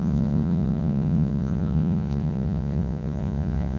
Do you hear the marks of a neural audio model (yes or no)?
yes